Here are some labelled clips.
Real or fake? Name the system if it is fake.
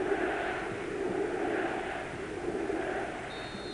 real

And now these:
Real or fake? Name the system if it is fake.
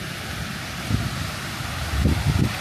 real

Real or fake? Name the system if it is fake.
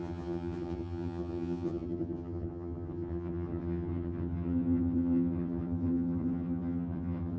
fake, vocoder, HiFi-GAN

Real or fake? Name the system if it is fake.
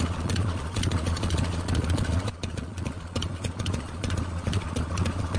fake, vocoder, Vocos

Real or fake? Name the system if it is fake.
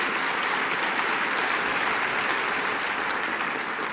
real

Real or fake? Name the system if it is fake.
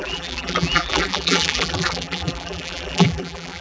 fake, vocoder, BigVGAN v2